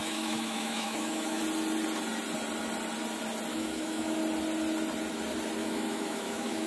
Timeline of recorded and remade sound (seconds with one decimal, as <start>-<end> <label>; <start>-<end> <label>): 0.0-1.4 remade; 1.4-3.5 recorded; 3.5-4.2 remade; 4.2-5.6 recorded; 5.6-6.7 remade